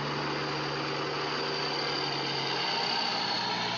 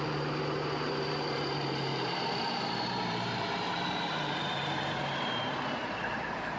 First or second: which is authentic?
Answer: first